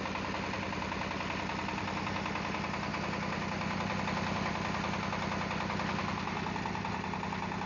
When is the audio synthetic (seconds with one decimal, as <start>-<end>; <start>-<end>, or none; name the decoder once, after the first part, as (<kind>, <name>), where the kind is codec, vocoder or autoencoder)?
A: none